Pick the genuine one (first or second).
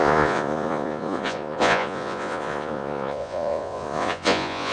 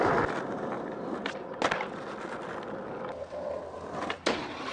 second